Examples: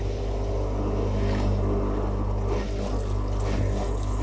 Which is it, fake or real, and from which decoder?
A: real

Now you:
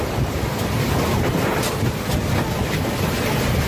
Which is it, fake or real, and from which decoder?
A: real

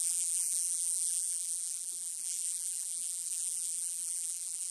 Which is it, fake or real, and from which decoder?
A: fake, vocoder, BigVGAN v2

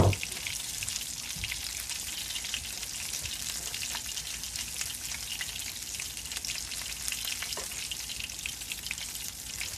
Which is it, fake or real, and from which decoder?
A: real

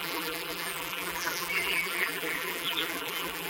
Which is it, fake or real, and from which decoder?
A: fake, vocoder, BigVGAN v2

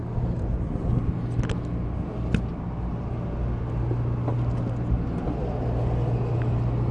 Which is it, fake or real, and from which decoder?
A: real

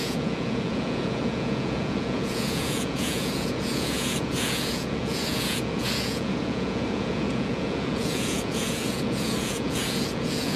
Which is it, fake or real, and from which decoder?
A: fake, vocoder, Vocos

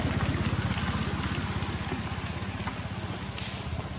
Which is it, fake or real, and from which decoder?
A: real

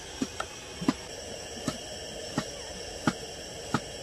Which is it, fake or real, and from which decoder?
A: real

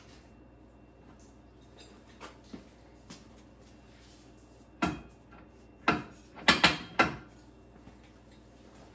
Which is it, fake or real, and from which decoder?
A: real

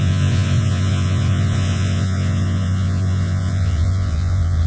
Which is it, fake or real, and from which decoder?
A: fake, vocoder, Vocos